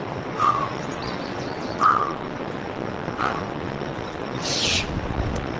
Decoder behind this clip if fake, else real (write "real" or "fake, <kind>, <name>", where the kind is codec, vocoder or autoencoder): fake, vocoder, WaveNeXt